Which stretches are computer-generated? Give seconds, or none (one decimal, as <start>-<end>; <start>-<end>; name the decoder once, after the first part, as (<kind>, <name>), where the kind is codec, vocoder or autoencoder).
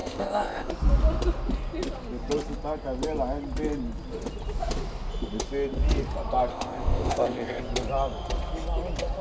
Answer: 0.0-0.7 (codec, ZipCodec); 6.5-7.6